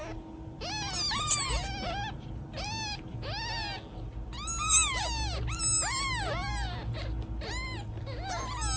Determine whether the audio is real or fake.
real